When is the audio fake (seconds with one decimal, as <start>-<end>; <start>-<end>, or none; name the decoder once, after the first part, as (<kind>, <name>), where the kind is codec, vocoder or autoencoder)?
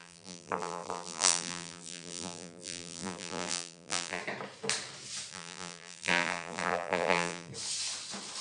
0.0-4.2 (vocoder, BigVGAN v2); 5.3-7.5